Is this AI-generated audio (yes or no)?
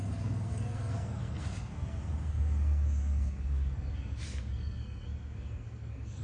yes